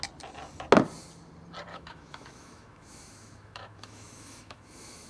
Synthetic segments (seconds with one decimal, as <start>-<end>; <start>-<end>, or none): 1.7-5.1